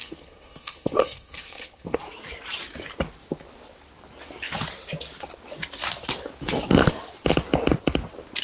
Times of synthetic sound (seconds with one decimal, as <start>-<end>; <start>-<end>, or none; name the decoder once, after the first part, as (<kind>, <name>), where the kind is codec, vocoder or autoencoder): 0.0-2.0 (codec, SNAC)